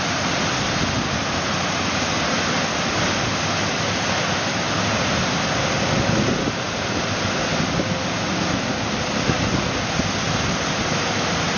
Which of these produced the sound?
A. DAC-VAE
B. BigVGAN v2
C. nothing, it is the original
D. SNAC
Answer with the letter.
C